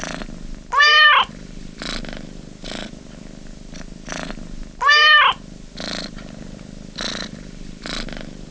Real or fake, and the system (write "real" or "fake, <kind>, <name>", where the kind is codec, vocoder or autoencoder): real